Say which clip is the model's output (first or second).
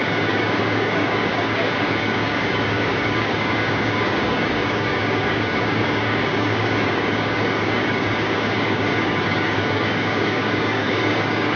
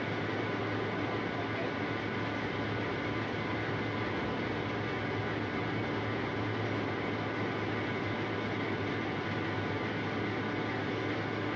first